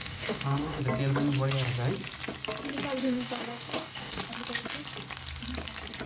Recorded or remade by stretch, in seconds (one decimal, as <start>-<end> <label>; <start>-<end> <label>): 0.0-0.8 remade; 0.8-3.0 recorded; 3.0-4.2 remade; 4.2-6.1 recorded